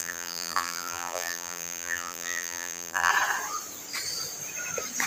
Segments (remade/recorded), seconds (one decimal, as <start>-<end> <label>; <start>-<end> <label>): 0.0-3.1 remade; 3.1-5.1 recorded